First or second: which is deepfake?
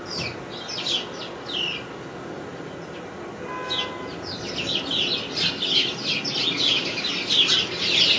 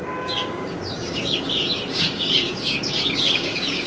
second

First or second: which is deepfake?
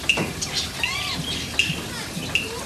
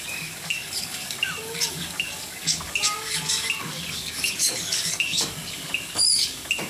second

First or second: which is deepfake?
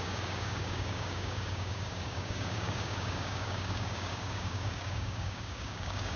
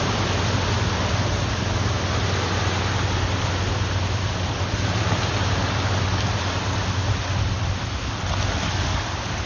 first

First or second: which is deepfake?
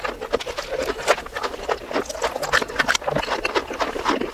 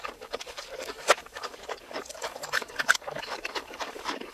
second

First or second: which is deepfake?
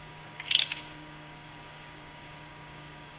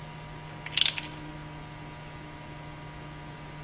first